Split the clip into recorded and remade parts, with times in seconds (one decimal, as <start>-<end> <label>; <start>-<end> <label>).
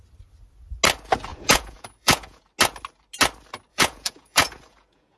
0.0-1.3 recorded; 1.3-2.4 remade; 2.4-3.7 recorded; 3.7-5.2 remade